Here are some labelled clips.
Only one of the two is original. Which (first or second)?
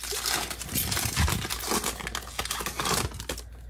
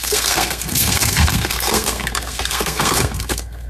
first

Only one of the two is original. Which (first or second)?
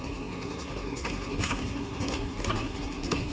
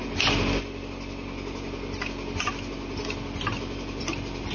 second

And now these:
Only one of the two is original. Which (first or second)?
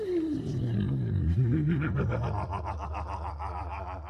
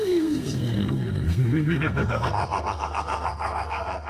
first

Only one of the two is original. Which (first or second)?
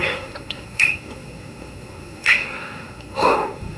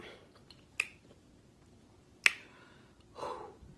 second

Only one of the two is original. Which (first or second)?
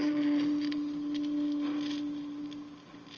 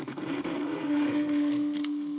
first